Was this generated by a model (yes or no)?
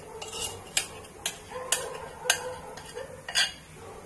no